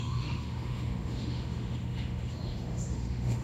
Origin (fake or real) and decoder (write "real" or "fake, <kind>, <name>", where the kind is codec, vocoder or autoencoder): fake, autoencoder, DAC-VAE